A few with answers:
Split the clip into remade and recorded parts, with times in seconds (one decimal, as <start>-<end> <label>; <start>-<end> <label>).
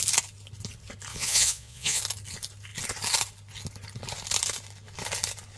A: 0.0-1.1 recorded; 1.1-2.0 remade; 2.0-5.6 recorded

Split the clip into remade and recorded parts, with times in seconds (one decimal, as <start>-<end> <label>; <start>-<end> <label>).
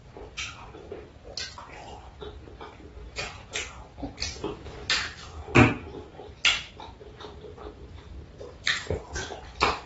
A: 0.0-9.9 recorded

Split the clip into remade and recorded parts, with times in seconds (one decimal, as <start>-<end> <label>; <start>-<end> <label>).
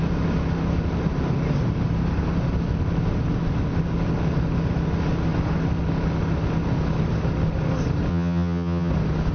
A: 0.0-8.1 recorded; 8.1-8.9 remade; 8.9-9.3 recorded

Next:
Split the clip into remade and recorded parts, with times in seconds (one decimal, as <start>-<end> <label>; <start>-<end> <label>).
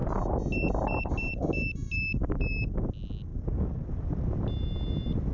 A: 0.0-5.3 recorded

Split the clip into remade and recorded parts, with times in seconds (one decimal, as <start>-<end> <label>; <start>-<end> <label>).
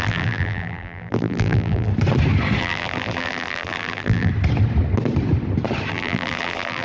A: 0.0-1.9 remade; 1.9-2.6 recorded; 2.6-4.3 remade; 4.3-5.9 recorded; 5.9-6.8 remade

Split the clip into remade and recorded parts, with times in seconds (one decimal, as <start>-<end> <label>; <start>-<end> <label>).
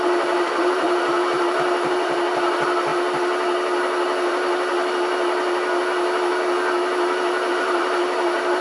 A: 0.0-2.9 remade; 2.9-7.5 recorded; 7.5-8.6 remade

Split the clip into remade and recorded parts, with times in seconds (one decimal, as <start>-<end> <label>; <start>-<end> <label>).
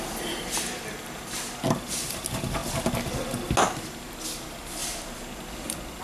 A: 0.0-1.6 remade; 1.6-4.8 recorded; 4.8-6.0 remade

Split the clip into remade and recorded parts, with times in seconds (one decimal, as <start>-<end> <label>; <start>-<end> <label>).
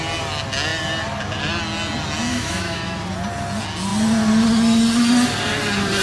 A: 0.0-2.3 recorded; 2.3-3.0 remade; 3.0-6.0 recorded